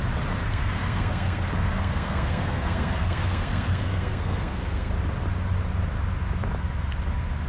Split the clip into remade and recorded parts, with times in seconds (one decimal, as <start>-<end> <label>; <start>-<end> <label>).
0.0-0.4 recorded; 0.4-4.9 remade; 4.9-7.5 recorded